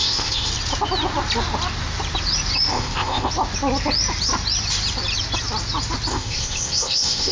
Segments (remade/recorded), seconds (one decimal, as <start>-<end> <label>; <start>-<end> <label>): 0.0-0.5 remade; 0.5-2.7 recorded; 2.7-3.3 remade; 3.3-6.1 recorded; 6.1-7.3 remade